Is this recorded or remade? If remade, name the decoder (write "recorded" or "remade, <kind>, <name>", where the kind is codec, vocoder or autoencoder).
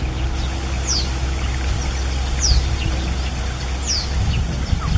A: recorded